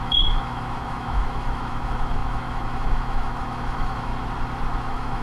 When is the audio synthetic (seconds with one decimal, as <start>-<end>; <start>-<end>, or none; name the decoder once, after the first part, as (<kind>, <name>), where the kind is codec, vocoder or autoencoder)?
0.0-4.1 (autoencoder, DAC-VAE); 4.8-5.2